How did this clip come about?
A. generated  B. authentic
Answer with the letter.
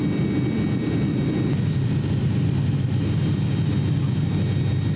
B